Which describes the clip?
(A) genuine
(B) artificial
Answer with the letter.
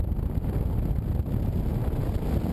A